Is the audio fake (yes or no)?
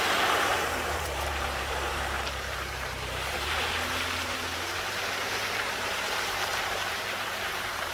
yes